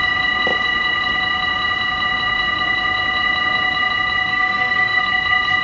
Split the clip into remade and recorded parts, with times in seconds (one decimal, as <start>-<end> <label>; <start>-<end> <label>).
0.0-4.3 recorded; 4.3-5.0 remade; 5.0-5.6 recorded